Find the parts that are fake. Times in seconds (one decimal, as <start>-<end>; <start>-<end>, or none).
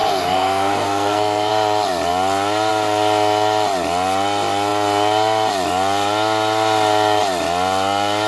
0.0-1.5